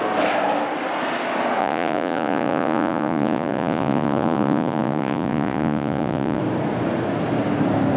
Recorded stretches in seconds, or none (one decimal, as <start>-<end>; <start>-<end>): 0.0-1.6; 6.4-8.0

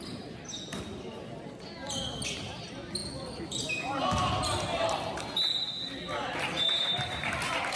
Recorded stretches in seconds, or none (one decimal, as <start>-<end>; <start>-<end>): 0.0-7.8

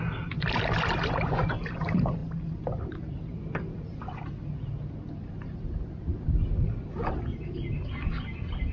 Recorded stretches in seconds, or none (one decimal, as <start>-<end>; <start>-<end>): 0.0-8.7

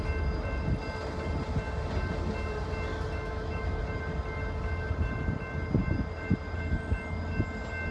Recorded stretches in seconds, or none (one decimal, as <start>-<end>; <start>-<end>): 0.0-2.9; 3.8-7.9

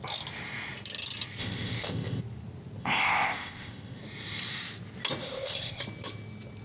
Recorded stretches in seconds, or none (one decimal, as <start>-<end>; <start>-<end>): 0.0-1.4; 2.2-2.8; 4.0-5.2; 5.8-6.6